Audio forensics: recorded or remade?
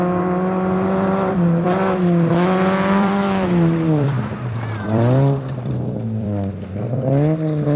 remade